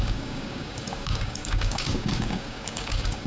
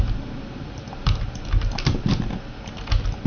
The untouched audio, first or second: second